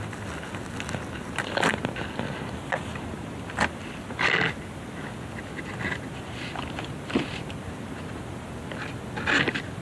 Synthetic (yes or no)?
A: no